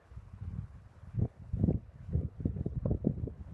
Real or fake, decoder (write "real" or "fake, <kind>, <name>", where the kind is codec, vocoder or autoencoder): fake, codec, HILCodec